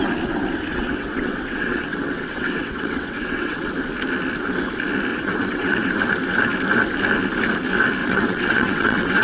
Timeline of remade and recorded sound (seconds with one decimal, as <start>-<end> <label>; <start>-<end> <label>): 0.0-0.7 recorded; 0.7-3.7 remade; 3.7-5.1 recorded; 5.1-5.9 remade; 5.9-8.0 recorded; 8.0-9.2 remade